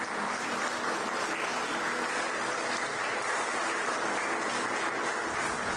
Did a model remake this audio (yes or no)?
no